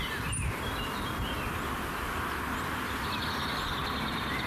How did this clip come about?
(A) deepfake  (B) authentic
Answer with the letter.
B